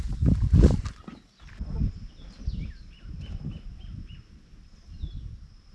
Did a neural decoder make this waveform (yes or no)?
no